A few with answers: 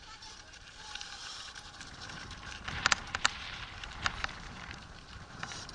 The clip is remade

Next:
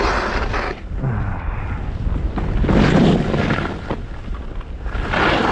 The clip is recorded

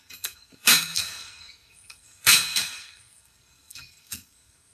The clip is remade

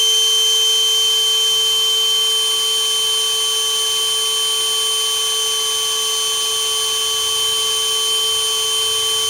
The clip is recorded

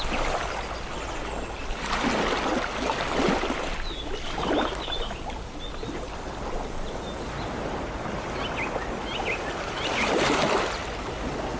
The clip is recorded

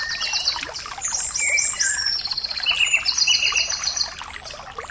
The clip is recorded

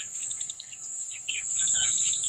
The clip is remade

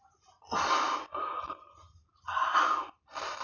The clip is recorded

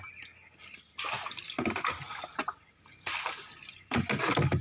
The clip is recorded